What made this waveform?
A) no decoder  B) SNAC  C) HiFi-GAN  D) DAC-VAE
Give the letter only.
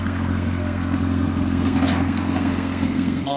B